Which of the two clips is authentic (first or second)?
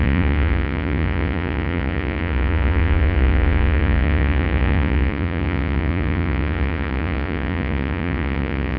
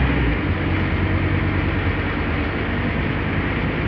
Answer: second